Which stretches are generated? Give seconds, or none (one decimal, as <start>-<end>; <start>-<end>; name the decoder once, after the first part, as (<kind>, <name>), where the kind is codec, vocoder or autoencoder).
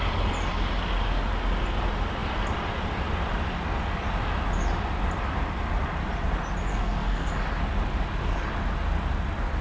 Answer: 6.7-7.3 (codec, SNAC)